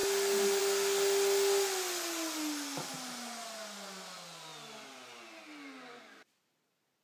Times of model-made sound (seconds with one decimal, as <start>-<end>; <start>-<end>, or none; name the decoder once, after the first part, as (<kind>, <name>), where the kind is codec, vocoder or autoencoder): none